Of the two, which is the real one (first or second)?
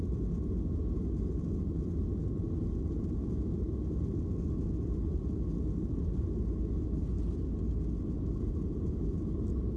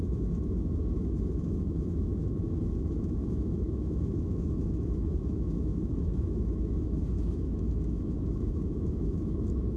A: first